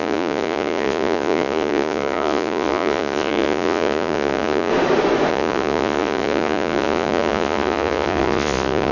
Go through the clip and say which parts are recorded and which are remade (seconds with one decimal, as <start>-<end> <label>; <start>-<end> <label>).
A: 0.0-4.7 remade; 4.7-5.3 recorded; 5.3-8.9 remade